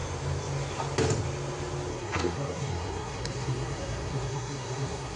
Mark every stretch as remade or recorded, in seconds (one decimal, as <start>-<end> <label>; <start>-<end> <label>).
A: 0.0-1.9 recorded; 1.9-5.2 remade